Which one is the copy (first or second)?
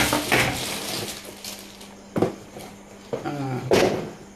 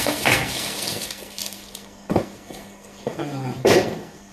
second